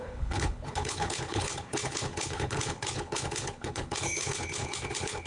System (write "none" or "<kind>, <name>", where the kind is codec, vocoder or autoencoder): codec, HILCodec